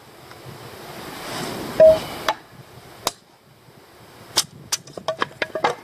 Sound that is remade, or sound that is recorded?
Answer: recorded